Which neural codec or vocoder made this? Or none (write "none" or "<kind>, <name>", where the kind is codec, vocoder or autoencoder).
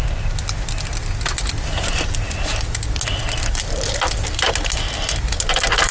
none